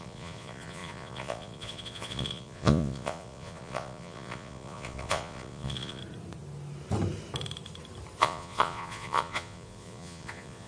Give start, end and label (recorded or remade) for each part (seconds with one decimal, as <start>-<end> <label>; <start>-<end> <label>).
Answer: 0.0-6.0 remade; 6.0-8.2 recorded; 8.2-10.7 remade